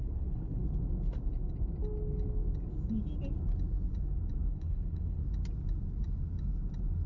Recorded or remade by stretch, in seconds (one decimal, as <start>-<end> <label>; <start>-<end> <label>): 0.0-0.6 remade; 0.6-4.5 recorded; 4.5-5.2 remade; 5.2-7.1 recorded

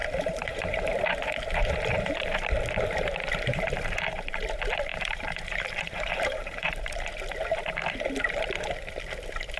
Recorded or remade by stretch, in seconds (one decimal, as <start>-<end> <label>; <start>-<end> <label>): 0.0-0.9 remade; 0.9-1.6 recorded; 1.6-2.2 remade; 2.2-3.5 recorded; 3.5-4.4 remade; 4.4-4.9 recorded; 4.9-7.1 remade; 7.1-9.6 recorded

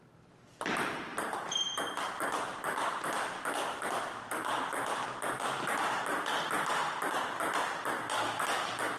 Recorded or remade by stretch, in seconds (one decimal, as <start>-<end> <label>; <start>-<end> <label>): 0.0-1.1 recorded; 1.1-1.8 remade; 1.8-9.0 recorded

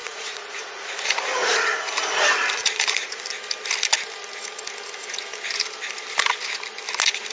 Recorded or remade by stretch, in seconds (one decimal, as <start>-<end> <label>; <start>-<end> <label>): 0.0-3.2 remade; 3.2-7.3 recorded

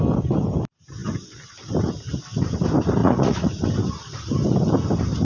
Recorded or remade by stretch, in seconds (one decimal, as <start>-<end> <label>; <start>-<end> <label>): 0.0-3.0 recorded; 3.0-3.6 remade; 3.6-5.2 recorded